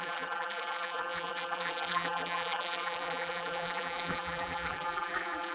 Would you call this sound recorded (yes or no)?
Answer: no